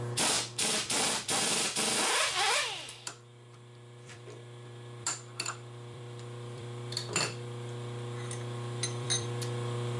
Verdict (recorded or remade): remade